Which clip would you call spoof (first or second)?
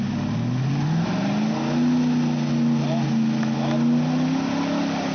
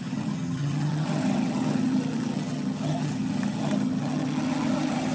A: second